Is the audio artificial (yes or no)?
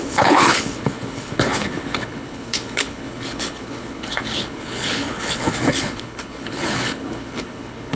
yes